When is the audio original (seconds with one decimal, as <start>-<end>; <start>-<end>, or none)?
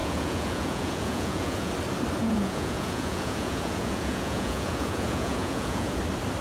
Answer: 1.7-2.2; 6.0-6.4